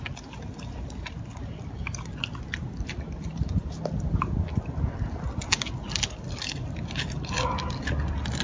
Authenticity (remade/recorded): recorded